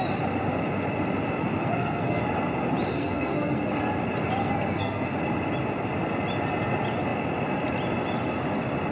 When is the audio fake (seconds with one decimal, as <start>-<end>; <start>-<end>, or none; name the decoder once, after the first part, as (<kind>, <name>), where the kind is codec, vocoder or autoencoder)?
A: 1.4-2.2 (codec, SNAC); 2.9-3.8; 4.4-5.2